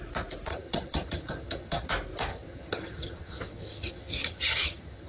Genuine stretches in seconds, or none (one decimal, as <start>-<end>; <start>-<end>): 0.0-0.5; 1.9-2.3

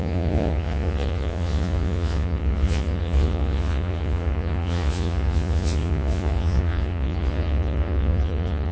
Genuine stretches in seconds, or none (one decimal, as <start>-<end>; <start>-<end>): none

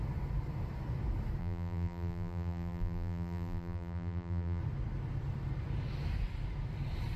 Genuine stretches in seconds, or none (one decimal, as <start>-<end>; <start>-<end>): 0.0-1.4; 4.6-7.2

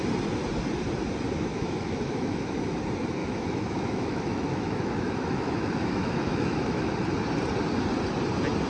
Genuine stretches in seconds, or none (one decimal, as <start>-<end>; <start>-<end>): 0.0-1.5; 2.8-3.2; 6.9-8.7

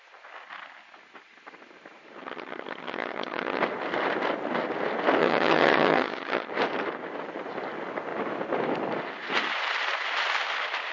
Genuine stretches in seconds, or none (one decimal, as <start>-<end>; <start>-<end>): 0.0-2.2; 3.6-5.2; 6.5-10.9

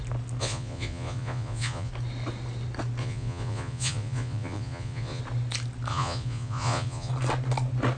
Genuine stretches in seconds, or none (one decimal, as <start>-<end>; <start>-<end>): 0.0-0.4; 1.9-3.0; 5.2-5.9; 7.1-8.0